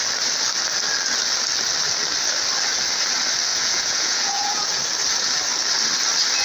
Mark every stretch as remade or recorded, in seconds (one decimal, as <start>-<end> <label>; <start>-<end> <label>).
0.0-3.5 recorded; 3.5-4.8 remade; 4.8-6.4 recorded